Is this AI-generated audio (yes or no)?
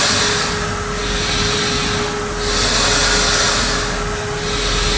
no